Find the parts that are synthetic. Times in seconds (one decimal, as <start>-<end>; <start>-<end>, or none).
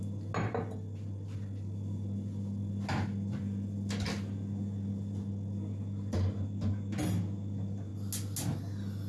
none